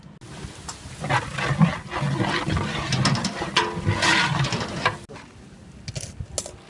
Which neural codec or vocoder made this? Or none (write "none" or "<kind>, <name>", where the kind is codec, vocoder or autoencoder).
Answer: none